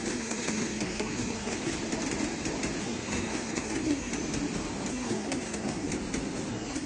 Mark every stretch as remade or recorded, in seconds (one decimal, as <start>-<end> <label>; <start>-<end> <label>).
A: 0.0-1.7 remade; 1.7-2.8 recorded; 2.8-4.1 remade; 4.1-4.9 recorded; 4.9-5.9 remade; 5.9-6.5 recorded; 6.5-6.9 remade